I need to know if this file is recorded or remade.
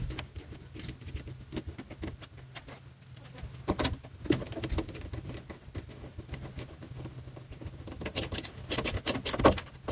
recorded